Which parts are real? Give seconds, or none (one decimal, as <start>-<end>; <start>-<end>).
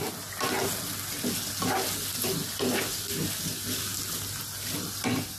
0.0-5.4